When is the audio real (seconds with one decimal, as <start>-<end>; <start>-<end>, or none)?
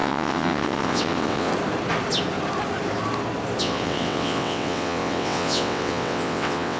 1.5-3.6